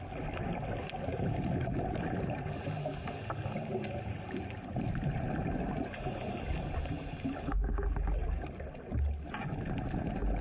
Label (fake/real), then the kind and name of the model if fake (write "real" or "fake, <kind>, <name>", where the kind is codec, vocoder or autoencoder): real